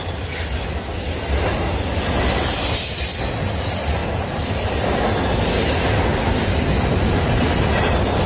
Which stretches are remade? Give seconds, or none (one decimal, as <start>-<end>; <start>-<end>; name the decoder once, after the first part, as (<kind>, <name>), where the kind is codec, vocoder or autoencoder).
none